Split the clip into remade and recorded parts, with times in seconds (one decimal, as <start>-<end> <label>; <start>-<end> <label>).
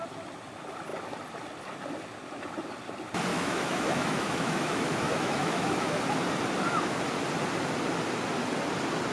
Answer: 0.0-3.3 recorded; 3.3-6.0 remade; 6.0-9.1 recorded